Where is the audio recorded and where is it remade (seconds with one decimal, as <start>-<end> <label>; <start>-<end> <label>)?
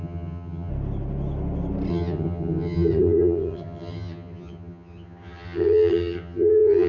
0.0-0.7 remade; 0.7-1.9 recorded; 1.9-6.9 remade